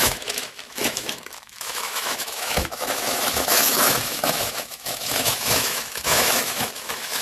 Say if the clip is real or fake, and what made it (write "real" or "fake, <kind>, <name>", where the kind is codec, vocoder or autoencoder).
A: fake, autoencoder, DAC-VAE